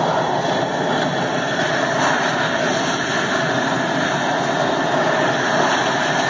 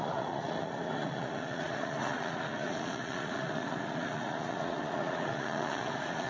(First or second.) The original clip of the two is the first